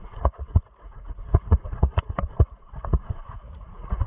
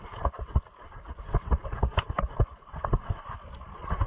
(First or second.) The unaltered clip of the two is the second